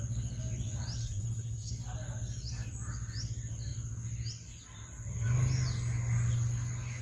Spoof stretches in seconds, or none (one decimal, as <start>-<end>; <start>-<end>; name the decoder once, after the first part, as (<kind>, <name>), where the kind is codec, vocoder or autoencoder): 1.0-1.7 (codec, SNAC)